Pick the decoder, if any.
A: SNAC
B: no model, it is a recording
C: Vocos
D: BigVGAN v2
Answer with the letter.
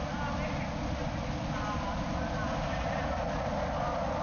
B